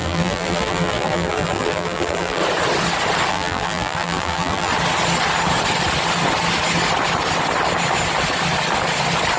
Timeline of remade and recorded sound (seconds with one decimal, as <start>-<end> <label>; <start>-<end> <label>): 0.0-2.4 remade; 2.4-3.3 recorded; 3.3-4.7 remade; 4.7-9.4 recorded